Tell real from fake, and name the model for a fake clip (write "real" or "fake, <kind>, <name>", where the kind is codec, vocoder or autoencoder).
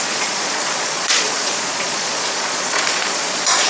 fake, vocoder, Vocos